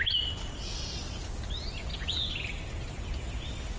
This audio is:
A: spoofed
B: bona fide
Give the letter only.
B